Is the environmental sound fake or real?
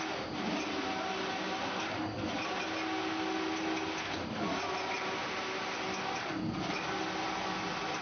real